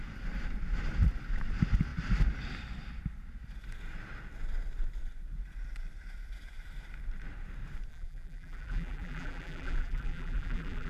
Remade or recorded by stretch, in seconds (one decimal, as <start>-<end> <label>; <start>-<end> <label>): 0.0-7.9 recorded; 7.9-10.9 remade